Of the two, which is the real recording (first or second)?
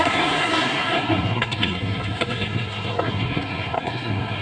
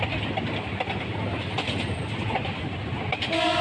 second